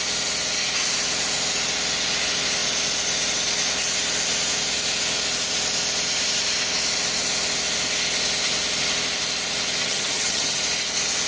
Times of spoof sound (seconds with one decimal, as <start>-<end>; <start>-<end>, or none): 9.8-10.6